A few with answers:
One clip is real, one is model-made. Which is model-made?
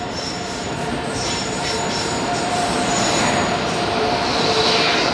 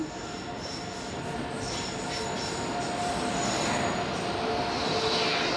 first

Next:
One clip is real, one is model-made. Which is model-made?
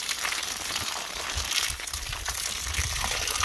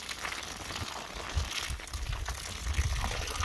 first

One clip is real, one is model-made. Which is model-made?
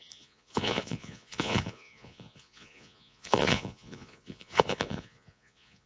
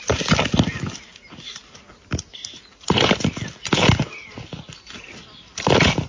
first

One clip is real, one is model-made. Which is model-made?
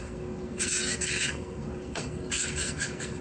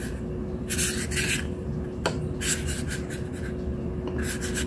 first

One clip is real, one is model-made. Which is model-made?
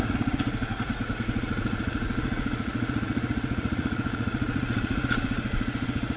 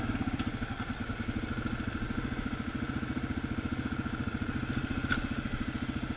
first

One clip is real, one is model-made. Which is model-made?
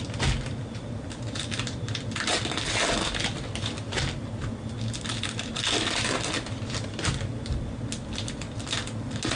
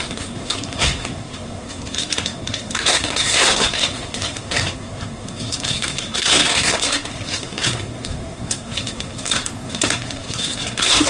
second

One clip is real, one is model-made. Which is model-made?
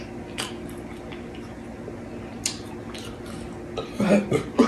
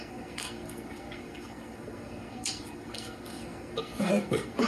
second